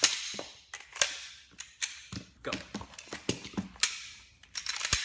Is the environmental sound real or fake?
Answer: real